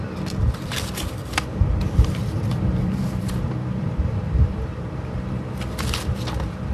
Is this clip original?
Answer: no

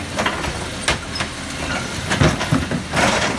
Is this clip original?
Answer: yes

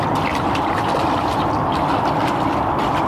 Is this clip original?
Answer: no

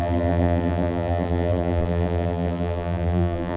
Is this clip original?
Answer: no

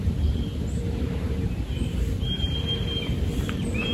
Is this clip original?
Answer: no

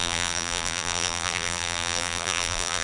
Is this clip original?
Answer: no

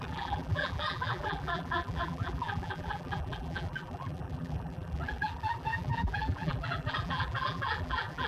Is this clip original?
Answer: no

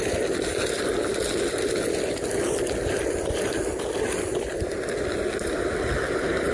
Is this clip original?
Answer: yes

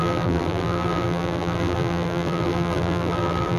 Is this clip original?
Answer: no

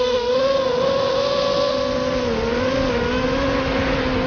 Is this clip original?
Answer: yes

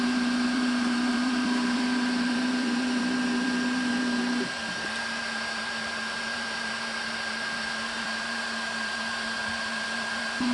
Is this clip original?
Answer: no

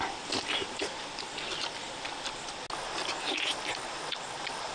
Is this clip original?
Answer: yes